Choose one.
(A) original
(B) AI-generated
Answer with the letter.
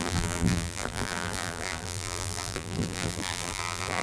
B